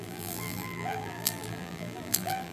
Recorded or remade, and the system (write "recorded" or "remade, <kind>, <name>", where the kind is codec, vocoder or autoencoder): remade, vocoder, BigVGAN v2